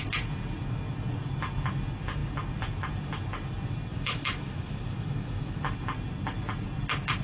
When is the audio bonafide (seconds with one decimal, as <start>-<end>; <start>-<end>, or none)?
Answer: 0.0-3.9; 5.6-7.2